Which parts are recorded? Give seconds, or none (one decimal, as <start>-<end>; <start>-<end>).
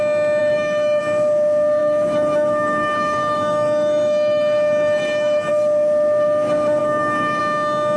0.0-0.4; 1.0-1.8; 5.5-6.8; 7.4-8.0